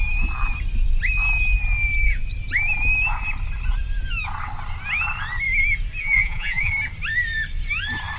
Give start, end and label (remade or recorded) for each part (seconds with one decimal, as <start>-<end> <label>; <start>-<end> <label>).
0.0-6.0 recorded; 6.0-6.7 remade; 6.7-8.2 recorded